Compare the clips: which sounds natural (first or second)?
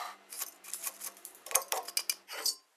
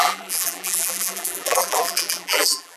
first